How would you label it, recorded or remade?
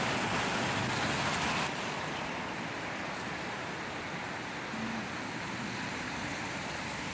recorded